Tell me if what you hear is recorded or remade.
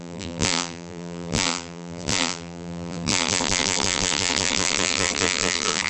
remade